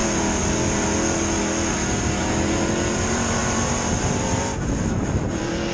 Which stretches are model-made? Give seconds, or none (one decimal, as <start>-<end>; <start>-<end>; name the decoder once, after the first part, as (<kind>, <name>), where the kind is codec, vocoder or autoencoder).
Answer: 2.2-5.7 (vocoder, BigVGAN v2)